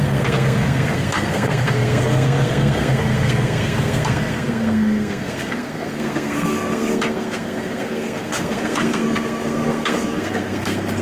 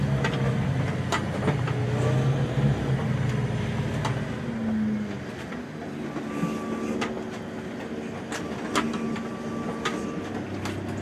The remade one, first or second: first